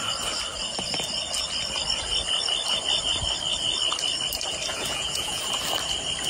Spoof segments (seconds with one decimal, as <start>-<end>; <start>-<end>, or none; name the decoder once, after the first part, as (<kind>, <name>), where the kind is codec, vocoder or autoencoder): 4.7-5.4 (vocoder, Vocos)